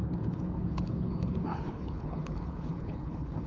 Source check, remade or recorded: remade